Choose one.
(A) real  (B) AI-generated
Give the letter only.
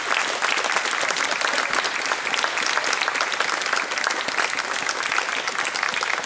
A